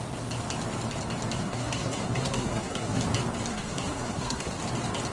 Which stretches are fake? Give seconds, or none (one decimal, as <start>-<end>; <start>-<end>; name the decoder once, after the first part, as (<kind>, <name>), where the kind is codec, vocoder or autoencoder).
1.4-3.0 (codec, SNAC); 3.5-4.6